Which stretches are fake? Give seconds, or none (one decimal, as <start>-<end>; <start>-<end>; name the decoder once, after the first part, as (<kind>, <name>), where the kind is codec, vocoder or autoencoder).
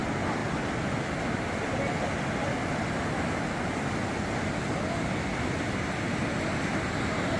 none